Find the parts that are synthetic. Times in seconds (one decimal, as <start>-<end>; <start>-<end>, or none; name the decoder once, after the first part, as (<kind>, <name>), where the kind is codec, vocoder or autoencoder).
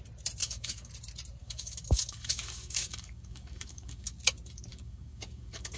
0.4-0.9 (codec, DAC); 1.4-4.2; 4.7-5.8